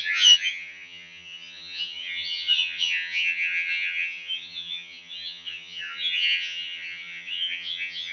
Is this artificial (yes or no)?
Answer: yes